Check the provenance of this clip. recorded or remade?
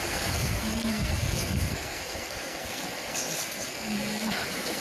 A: remade